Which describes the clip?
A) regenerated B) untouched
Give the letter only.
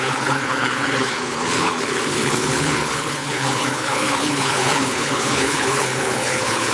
A